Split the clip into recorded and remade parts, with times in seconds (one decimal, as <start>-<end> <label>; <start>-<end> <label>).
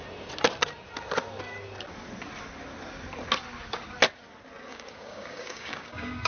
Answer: 0.0-4.7 recorded; 4.7-6.3 remade